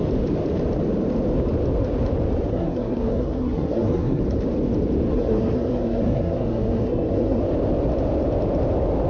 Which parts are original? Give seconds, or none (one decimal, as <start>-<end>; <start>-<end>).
0.0-2.5; 4.2-5.1; 7.4-9.1